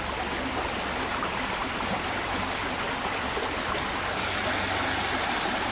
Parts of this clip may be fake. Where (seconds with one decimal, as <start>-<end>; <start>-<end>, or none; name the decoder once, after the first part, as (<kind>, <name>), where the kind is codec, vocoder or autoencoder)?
none